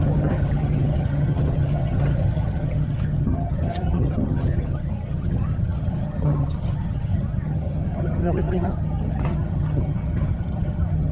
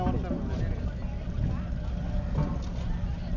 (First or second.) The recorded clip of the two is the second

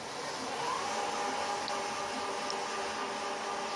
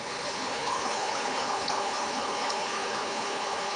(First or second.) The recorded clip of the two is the first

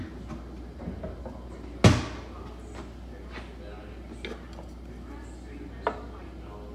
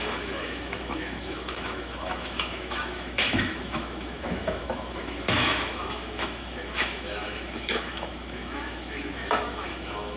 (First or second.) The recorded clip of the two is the first